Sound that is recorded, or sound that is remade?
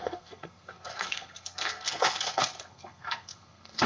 remade